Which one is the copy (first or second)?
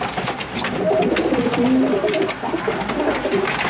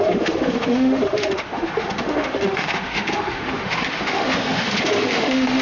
second